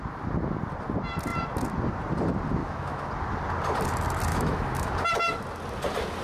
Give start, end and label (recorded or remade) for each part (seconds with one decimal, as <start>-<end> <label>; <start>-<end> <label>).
0.0-2.6 recorded; 2.6-3.1 remade; 3.1-4.3 recorded; 4.3-4.9 remade; 4.9-6.2 recorded